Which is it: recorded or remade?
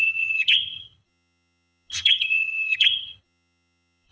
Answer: remade